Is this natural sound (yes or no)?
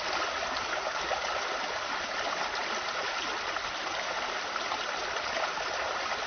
yes